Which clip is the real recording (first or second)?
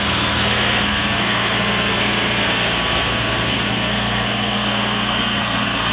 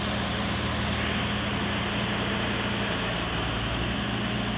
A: second